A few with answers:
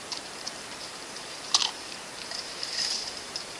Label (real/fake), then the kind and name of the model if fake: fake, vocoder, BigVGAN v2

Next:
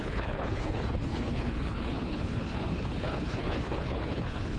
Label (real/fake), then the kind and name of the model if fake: fake, codec, HILCodec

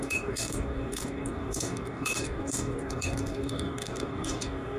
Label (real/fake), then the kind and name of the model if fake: fake, codec, DAC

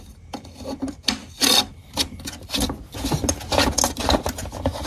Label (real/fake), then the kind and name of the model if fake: real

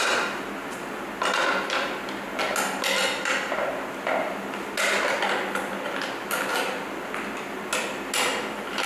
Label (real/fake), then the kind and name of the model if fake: real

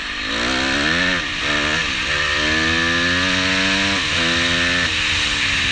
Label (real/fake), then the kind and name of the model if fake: real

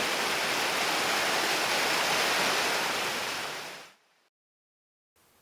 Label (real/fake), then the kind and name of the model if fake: real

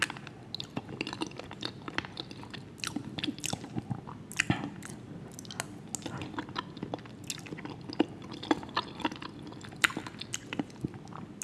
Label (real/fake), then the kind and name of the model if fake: real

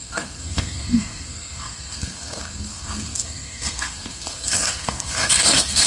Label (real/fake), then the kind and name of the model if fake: fake, codec, SNAC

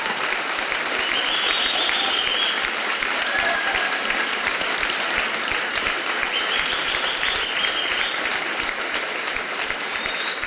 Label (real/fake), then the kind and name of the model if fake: fake, vocoder, BigVGAN v2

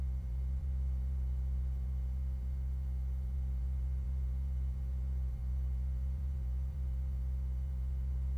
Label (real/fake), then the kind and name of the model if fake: fake, vocoder, BigVGAN v2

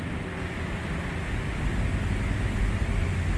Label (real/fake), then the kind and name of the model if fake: real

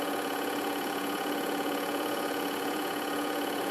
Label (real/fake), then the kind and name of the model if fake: fake, vocoder, Vocos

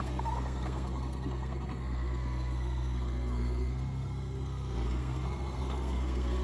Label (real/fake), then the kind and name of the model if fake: fake, codec, SNAC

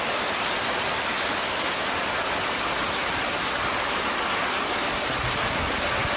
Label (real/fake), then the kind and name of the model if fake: real